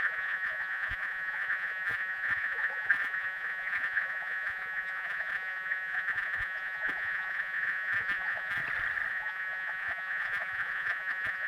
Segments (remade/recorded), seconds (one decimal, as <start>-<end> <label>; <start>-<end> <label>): 0.0-8.6 remade; 8.6-9.1 recorded; 9.1-11.5 remade